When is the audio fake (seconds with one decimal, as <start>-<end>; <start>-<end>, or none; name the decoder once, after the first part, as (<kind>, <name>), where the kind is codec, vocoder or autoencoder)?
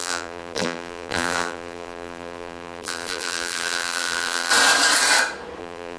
0.0-4.5 (vocoder, BigVGAN v2); 5.6-6.0